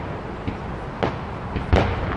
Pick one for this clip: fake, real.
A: real